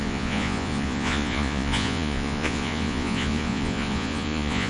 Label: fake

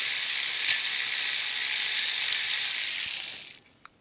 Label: fake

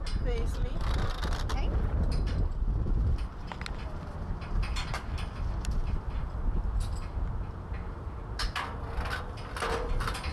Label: real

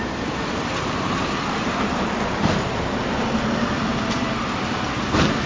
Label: fake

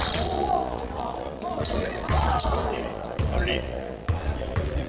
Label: fake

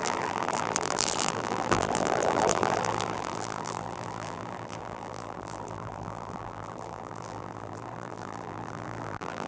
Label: fake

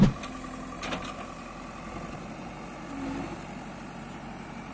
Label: real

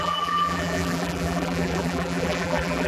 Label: fake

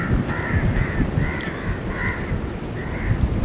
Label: real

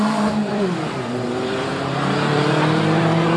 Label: fake